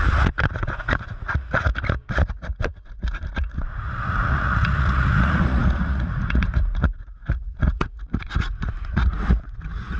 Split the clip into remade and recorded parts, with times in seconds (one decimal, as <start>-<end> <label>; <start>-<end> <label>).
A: 0.0-1.7 remade; 1.7-2.3 recorded; 2.3-10.0 remade